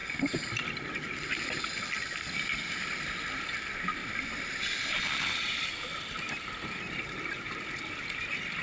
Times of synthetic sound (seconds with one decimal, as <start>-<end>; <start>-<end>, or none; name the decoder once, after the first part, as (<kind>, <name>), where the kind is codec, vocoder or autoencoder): none